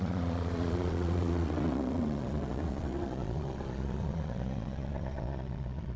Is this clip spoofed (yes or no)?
yes